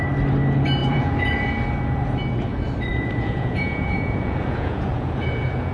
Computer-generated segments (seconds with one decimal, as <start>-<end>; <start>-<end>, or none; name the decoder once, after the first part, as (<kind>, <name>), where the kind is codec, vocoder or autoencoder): 0.8-1.5 (vocoder, Vocos); 2.9-5.7